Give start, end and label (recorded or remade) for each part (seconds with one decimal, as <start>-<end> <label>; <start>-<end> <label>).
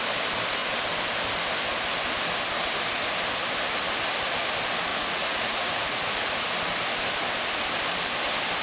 0.0-4.9 recorded; 4.9-6.5 remade; 6.5-8.6 recorded